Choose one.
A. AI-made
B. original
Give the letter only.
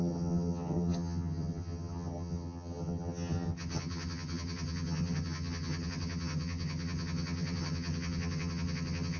A